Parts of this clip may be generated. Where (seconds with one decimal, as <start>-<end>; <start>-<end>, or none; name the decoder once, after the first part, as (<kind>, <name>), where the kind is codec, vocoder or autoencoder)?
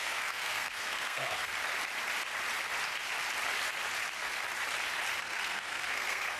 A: 0.0-1.5 (codec, SNAC); 5.2-6.4